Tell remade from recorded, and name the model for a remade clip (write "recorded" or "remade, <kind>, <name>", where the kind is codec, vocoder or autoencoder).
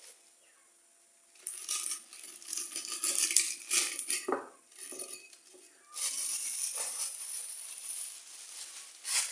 recorded